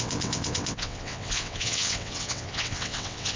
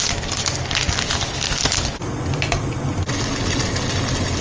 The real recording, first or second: second